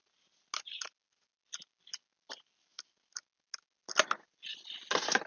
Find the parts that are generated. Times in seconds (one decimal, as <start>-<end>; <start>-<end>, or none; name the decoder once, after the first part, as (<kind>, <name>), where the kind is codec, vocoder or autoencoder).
none